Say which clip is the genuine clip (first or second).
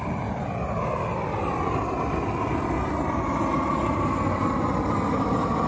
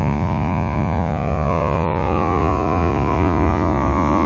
first